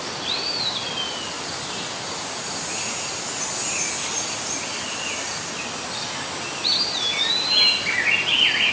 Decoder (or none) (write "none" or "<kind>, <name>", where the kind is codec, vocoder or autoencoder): none